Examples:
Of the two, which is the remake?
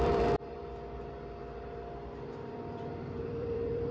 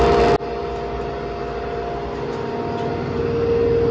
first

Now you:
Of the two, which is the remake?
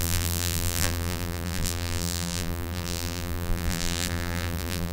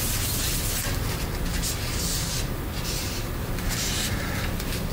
first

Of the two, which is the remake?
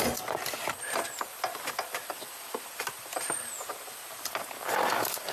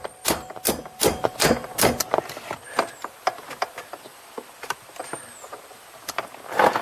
first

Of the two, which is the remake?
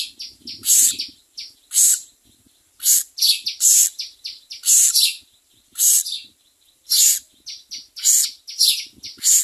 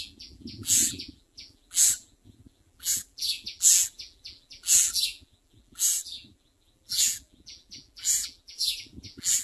second